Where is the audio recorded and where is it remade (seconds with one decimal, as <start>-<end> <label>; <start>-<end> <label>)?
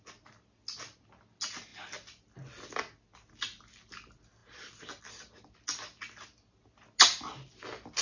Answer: 0.0-8.0 recorded